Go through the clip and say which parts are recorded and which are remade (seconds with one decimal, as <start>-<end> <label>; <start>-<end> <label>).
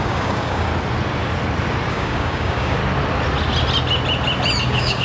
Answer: 0.0-0.7 remade; 0.7-1.9 recorded; 1.9-2.8 remade; 2.8-4.6 recorded; 4.6-5.0 remade